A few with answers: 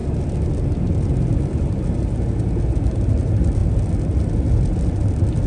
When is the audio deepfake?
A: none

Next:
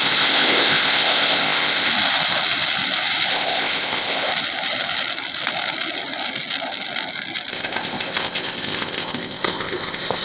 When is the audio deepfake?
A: 0.0-1.9 (codec, ZipCodec); 3.3-4.3; 7.5-10.2

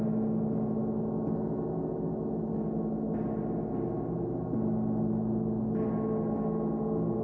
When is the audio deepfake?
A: none

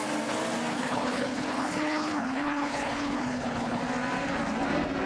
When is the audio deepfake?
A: 0.7-3.8 (codec, HILCodec)

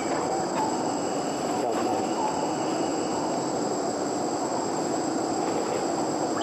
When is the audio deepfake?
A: 2.9-4.0 (vocoder, BigVGAN v2); 4.5-5.5